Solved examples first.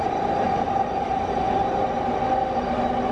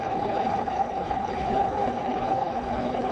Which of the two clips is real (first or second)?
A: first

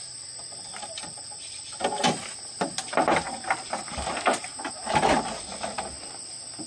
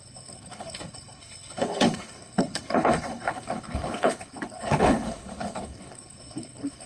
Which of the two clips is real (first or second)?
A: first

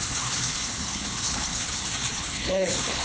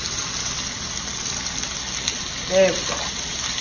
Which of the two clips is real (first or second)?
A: second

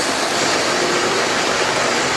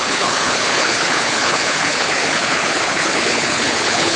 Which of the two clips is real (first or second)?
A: first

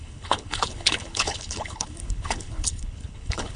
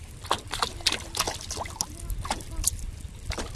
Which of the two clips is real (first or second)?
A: second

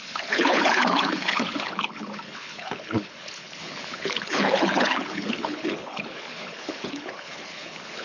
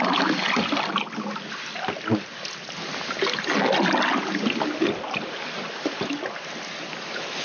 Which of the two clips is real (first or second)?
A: second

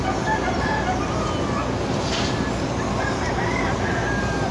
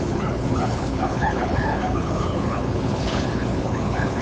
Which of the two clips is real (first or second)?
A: first